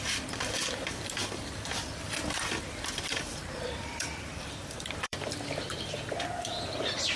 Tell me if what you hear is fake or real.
fake